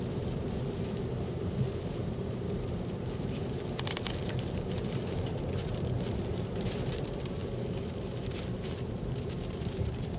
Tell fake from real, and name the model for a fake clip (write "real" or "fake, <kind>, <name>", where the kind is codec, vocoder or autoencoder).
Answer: fake, vocoder, BigVGAN v2